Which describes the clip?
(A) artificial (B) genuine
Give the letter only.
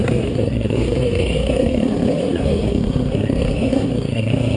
A